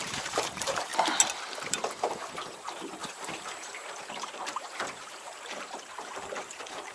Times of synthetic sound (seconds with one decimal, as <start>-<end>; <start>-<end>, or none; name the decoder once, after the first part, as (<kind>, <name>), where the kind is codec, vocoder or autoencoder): 0.0-0.9 (vocoder, BigVGAN v2); 1.7-6.9